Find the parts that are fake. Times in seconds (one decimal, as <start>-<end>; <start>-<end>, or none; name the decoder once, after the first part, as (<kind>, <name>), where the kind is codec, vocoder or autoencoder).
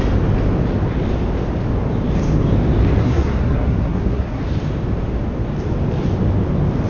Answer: 3.0-4.4 (codec, SNAC)